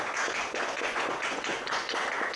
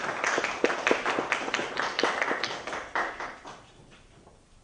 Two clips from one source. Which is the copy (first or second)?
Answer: first